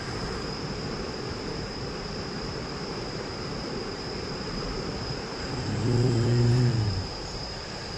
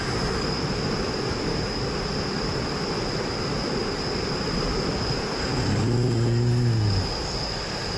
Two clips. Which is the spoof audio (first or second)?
first